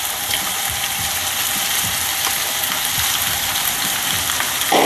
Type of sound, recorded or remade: recorded